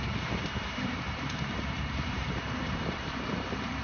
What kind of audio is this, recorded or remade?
remade